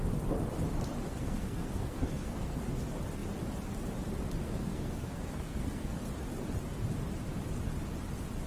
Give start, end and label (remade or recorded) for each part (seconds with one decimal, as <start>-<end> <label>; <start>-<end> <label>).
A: 0.0-1.0 recorded; 1.0-2.6 remade; 2.6-4.4 recorded; 4.4-6.0 remade; 6.0-8.5 recorded

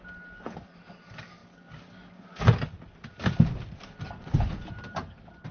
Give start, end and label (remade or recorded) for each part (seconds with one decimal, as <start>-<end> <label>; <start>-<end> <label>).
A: 0.0-5.5 recorded

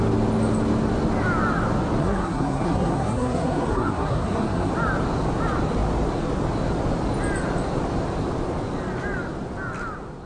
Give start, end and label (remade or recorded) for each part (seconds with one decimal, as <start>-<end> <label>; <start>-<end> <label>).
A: 0.0-2.0 recorded; 2.0-4.7 remade; 4.7-10.3 recorded

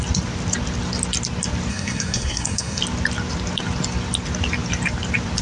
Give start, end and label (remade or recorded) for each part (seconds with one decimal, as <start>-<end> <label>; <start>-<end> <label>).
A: 0.0-1.7 recorded; 1.7-2.8 remade; 2.8-5.4 recorded

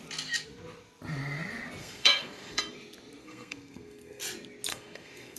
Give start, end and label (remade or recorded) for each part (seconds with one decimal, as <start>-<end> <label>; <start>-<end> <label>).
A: 0.0-1.8 recorded; 1.8-2.6 remade; 2.6-3.2 recorded; 3.2-4.2 remade; 4.2-4.7 recorded; 4.7-5.4 remade